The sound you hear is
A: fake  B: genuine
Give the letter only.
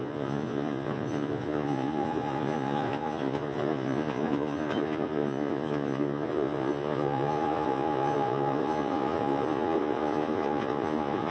A